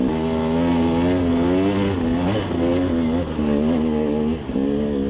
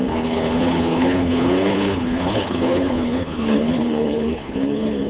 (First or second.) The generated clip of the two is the second